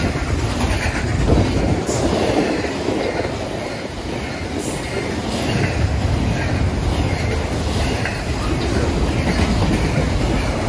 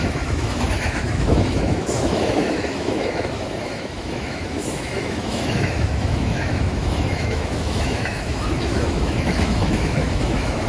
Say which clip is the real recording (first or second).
first